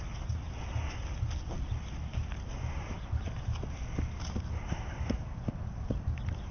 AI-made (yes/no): no